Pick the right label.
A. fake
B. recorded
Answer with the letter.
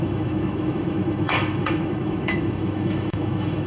A